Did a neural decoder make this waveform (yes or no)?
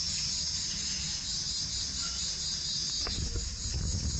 no